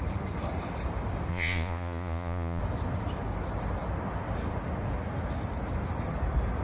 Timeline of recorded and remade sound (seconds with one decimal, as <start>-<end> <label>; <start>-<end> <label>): 0.0-1.3 recorded; 1.3-2.6 remade; 2.6-6.6 recorded